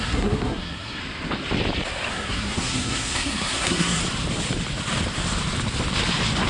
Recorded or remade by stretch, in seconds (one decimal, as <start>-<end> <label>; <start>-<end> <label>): 0.0-1.0 remade; 1.0-2.1 recorded; 2.1-4.0 remade; 4.0-6.5 recorded